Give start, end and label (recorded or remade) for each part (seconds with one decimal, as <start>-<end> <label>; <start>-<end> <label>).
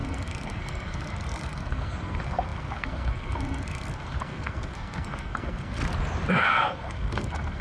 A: 0.0-5.8 remade; 5.8-6.3 recorded; 6.3-7.6 remade